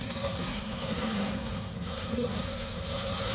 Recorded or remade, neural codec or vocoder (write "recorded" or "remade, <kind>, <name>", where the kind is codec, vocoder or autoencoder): remade, codec, SNAC